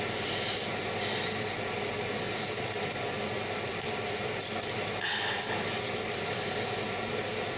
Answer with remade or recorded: recorded